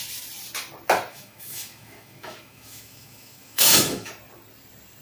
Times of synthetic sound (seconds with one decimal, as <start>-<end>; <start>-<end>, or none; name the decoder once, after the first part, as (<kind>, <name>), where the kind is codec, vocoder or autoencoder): 1.1-4.1 (autoencoder, DAC-VAE)